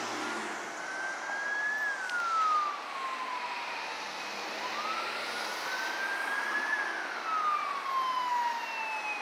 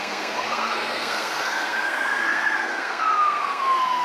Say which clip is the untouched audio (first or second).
first